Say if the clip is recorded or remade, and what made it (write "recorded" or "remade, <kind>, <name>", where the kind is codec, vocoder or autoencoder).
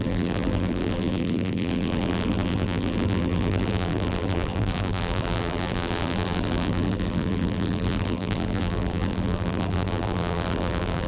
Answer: remade, vocoder, BigVGAN v2